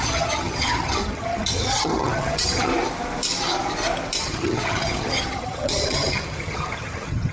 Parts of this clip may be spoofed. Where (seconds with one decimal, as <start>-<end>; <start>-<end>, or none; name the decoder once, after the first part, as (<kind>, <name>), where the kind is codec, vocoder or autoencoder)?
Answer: 0.0-2.7 (vocoder, HiFi-GAN); 4.2-7.3